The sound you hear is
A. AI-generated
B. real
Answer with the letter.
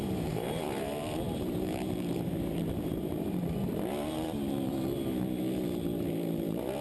A